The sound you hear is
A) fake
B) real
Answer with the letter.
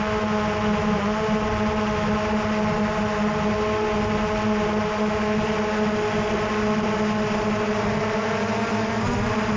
B